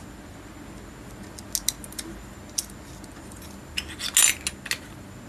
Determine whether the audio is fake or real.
real